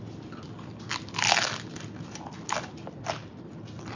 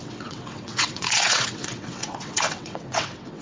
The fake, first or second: second